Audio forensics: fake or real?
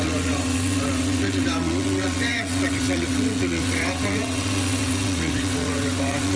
fake